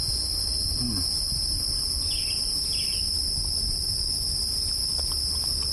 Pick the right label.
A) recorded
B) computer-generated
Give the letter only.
A